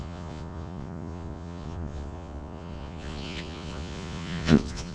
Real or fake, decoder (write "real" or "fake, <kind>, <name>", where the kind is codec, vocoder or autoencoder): fake, vocoder, Vocos